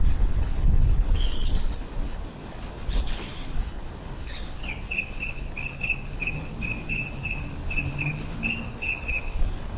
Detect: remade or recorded remade